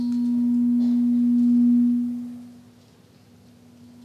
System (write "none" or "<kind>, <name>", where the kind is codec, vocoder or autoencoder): none